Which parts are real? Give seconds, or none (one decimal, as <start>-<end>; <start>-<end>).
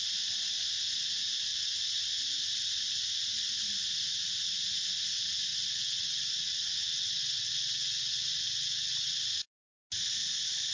0.0-5.5; 9.2-10.7